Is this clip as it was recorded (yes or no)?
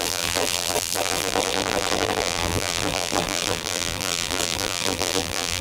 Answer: no